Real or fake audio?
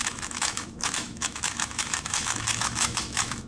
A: fake